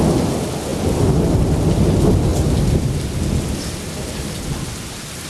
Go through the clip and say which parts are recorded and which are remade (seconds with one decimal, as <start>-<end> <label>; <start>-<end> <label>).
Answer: 0.0-5.3 recorded